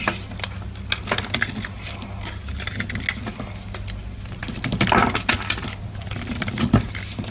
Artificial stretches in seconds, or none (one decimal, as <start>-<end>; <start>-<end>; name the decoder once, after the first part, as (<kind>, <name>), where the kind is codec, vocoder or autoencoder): none